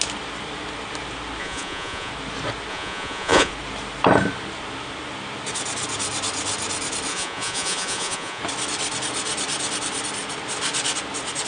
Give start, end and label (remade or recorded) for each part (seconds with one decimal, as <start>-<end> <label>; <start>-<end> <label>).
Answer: 0.0-1.4 recorded; 1.4-2.1 remade; 2.1-2.7 recorded; 2.7-3.5 remade; 3.5-7.1 recorded; 7.1-8.4 remade; 8.4-11.5 recorded